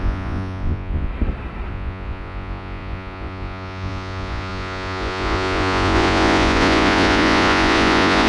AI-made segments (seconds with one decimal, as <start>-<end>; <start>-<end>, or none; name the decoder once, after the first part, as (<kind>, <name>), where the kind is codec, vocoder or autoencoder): 0.0-1.1 (vocoder, Vocos); 1.7-8.3